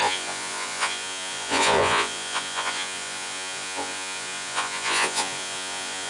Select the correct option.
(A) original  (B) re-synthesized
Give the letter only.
B